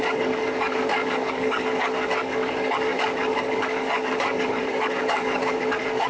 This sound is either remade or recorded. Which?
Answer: remade